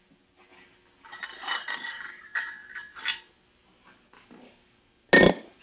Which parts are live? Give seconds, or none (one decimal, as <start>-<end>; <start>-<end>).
0.0-2.6; 3.3-5.6